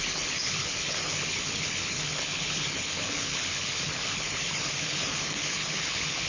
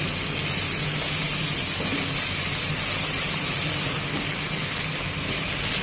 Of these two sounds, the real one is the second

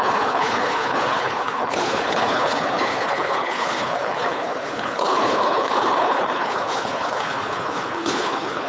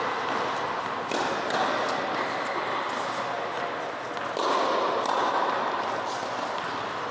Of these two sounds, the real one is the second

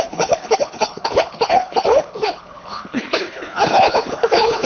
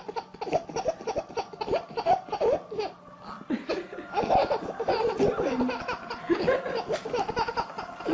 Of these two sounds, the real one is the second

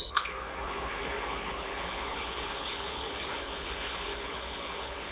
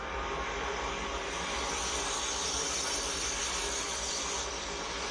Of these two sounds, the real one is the second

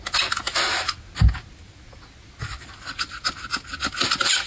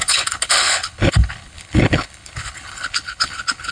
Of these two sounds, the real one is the first